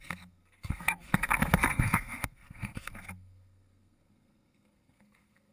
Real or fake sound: fake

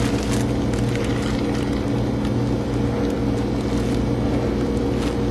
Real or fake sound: real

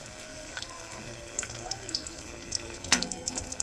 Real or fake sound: fake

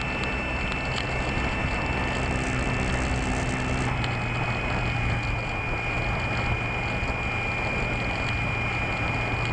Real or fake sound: real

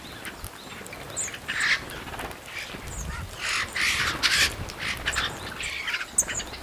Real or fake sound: real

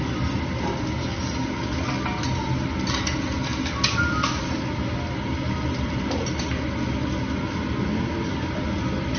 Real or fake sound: real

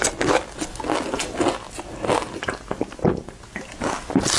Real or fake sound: real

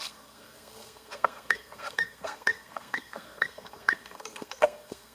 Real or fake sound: fake